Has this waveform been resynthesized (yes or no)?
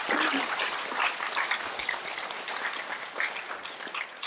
no